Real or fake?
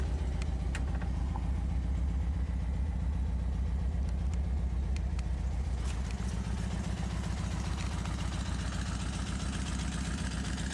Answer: real